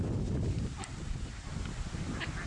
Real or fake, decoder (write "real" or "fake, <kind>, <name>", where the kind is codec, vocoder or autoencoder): real